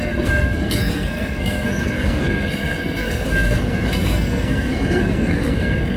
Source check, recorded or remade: remade